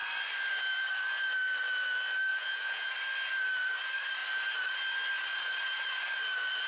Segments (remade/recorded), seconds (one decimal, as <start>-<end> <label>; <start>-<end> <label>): 0.0-2.3 recorded; 2.3-2.9 remade; 2.9-6.7 recorded